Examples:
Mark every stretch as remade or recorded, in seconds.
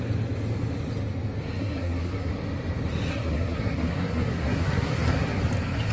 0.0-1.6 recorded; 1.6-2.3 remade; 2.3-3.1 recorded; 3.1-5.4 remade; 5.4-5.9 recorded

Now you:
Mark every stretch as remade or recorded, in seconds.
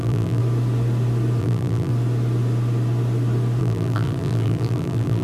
0.0-0.4 remade; 0.4-1.4 recorded; 1.4-1.9 remade; 1.9-3.6 recorded; 3.6-5.2 remade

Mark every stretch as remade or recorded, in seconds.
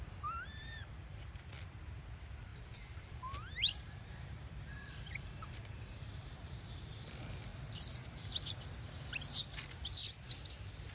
0.0-0.5 recorded; 0.5-1.5 remade; 1.5-2.5 recorded; 2.5-7.0 remade; 7.0-10.9 recorded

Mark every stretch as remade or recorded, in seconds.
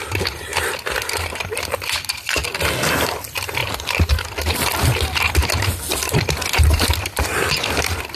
0.0-0.5 remade; 0.5-1.3 recorded; 1.3-2.4 remade; 2.4-2.9 recorded; 2.9-3.6 remade; 3.6-6.6 recorded; 6.6-8.2 remade